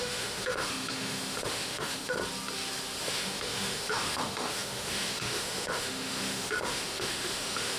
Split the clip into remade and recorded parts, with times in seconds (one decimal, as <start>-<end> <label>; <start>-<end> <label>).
0.0-2.2 remade; 2.2-3.0 recorded; 3.0-7.8 remade